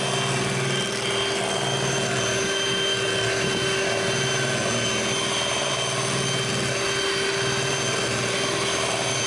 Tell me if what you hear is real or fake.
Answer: real